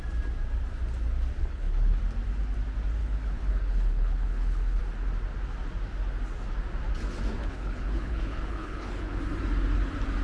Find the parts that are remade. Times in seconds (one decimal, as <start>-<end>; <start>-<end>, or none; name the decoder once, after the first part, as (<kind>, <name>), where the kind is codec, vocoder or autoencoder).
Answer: 1.4-2.0 (codec, HILCodec); 3.0-4.8; 7.4-9.2